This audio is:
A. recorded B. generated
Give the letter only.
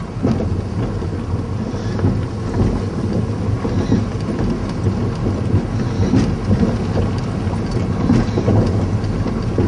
A